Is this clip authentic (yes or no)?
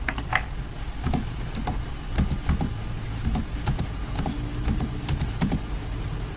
yes